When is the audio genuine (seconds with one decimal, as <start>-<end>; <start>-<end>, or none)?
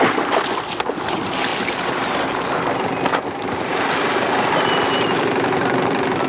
0.0-6.3